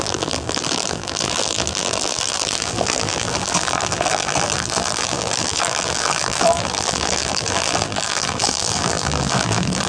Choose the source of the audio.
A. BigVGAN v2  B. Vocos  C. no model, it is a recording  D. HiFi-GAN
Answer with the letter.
A